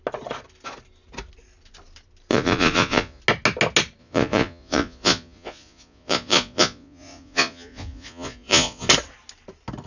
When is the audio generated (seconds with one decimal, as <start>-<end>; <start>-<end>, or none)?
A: 2.3-3.2; 4.0-8.9